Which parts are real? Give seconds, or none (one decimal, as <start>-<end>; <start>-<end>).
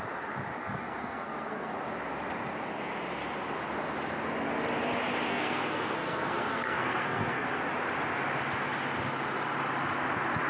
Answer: 0.0-0.6; 1.7-5.3; 7.6-10.5